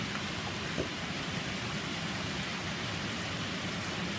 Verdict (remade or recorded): recorded